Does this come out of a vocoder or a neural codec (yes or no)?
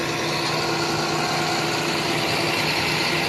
no